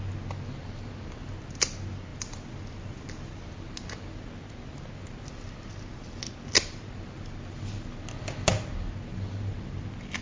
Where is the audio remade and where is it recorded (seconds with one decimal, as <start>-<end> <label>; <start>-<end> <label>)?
0.0-10.2 recorded